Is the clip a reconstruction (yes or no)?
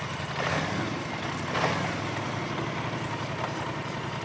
no